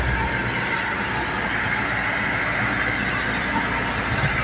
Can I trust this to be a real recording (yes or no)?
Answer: yes